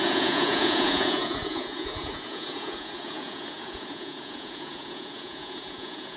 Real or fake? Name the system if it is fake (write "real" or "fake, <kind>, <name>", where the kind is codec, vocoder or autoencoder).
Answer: fake, vocoder, Vocos